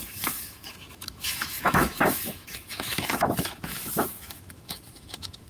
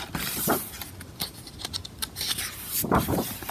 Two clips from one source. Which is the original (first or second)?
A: second